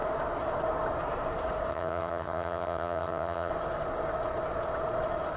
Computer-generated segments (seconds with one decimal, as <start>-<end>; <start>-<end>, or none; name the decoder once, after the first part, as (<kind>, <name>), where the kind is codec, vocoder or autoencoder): 1.7-3.5 (vocoder, HiFi-GAN)